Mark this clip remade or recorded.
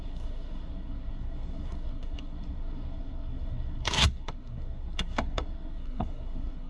remade